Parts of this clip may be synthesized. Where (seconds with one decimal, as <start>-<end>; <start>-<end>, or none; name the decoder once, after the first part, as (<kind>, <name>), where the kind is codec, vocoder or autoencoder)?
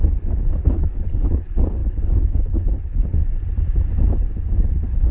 0.0-3.2 (codec, HILCodec); 4.6-5.1